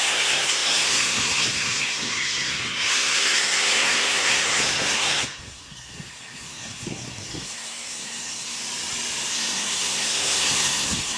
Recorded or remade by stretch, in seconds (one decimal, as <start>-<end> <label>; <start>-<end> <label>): 0.0-8.6 remade; 8.6-9.3 recorded; 9.3-11.2 remade